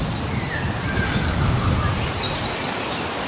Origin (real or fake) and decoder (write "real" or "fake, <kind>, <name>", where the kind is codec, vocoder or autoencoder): real